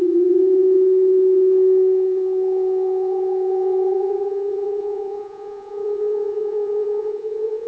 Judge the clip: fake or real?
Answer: fake